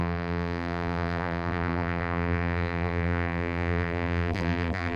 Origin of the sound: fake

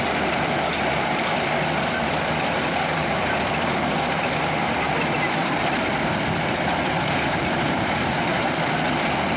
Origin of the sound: fake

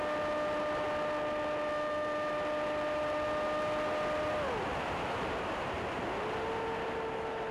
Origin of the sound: fake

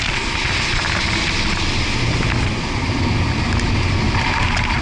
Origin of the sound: real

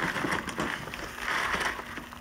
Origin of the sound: real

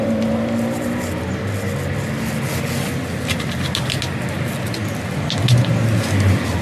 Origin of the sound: real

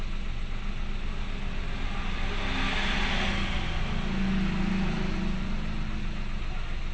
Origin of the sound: real